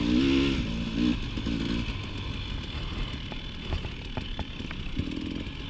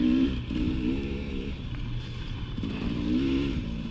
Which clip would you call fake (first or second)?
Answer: second